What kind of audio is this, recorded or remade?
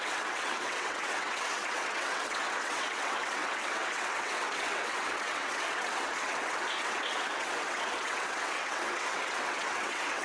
remade